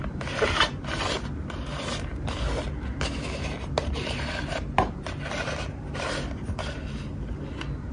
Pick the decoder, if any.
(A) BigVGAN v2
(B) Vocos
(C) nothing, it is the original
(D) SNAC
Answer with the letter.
C